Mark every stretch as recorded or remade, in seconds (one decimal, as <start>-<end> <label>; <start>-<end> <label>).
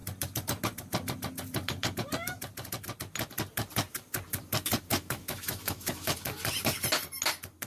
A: 0.0-4.9 recorded; 4.9-6.1 remade; 6.1-7.7 recorded